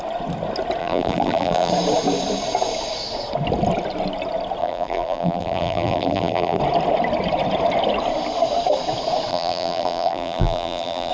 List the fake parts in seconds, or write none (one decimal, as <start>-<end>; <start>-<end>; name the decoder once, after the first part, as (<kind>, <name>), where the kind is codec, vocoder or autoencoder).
0.8-1.7 (vocoder, BigVGAN v2); 4.6-6.6; 9.3-11.1

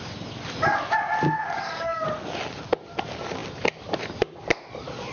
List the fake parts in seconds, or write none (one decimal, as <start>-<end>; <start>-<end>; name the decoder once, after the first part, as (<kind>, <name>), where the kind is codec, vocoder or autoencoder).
none

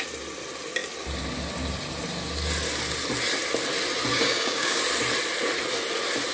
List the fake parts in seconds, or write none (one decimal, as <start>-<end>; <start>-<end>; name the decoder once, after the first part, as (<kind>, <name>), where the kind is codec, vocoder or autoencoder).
4.1-4.8 (codec, DAC)

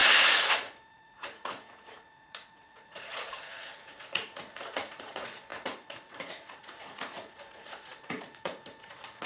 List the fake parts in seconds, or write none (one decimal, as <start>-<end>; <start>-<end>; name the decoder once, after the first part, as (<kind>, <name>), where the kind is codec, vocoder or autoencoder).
0.0-9.3 (vocoder, Vocos)